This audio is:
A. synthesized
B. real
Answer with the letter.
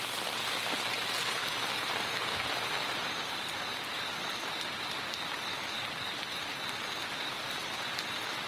B